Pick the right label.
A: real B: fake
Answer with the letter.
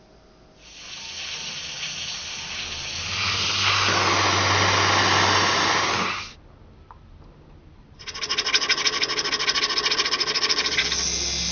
A